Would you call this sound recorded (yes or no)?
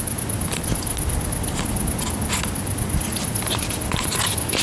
yes